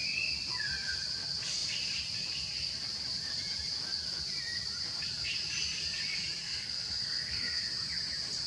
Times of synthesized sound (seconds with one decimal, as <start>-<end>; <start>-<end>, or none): 6.4-7.7